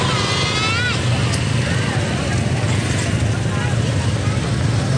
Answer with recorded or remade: recorded